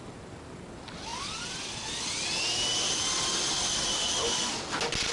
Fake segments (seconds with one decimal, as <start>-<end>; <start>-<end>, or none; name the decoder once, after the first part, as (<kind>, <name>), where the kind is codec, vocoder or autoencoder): none